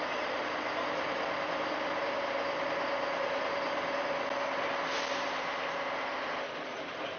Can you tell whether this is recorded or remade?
recorded